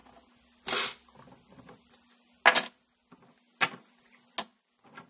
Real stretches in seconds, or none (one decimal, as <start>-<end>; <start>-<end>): 0.0-5.1